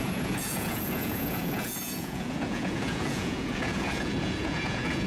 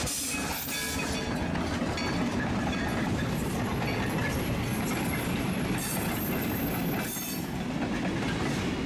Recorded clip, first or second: second